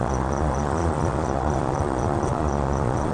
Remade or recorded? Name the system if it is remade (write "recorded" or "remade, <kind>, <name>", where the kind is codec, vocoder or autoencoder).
remade, vocoder, Vocos